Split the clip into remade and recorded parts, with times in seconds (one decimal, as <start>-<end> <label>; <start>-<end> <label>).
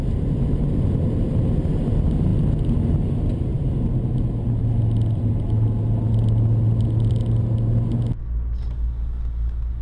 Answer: 0.0-9.8 recorded